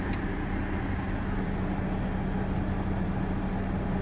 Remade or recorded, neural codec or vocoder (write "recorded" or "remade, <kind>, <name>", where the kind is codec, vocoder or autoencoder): recorded